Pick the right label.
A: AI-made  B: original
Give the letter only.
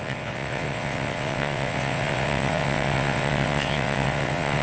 A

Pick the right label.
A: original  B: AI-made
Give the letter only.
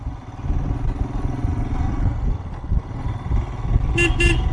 A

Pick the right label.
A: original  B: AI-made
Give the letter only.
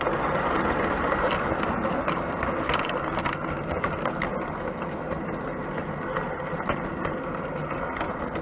A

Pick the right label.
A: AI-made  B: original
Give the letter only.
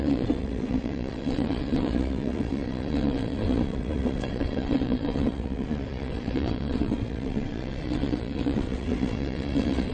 A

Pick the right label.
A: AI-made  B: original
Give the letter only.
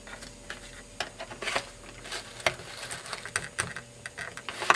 B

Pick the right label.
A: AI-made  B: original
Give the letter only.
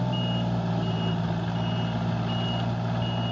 B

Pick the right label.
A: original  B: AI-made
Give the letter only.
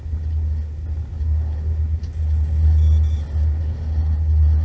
A